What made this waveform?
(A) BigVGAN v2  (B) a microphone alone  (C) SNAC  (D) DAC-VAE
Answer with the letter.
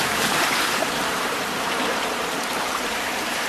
A